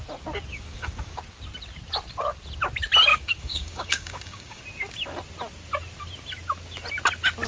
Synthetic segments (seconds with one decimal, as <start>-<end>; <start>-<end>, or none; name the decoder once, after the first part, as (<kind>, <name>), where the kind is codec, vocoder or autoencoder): 0.5-1.2 (codec, DAC); 3.1-4.6